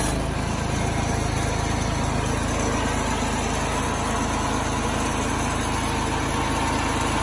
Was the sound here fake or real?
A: real